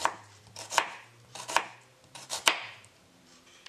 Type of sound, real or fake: fake